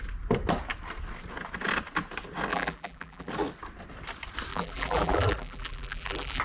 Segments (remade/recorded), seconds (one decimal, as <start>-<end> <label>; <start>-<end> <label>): 0.0-2.5 recorded; 2.5-3.3 remade; 3.3-4.5 recorded; 4.5-6.4 remade